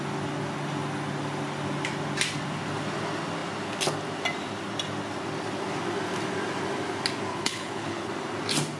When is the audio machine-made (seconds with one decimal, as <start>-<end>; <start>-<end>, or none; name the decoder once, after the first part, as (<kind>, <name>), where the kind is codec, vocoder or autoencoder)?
7.3-8.1 (codec, HILCodec)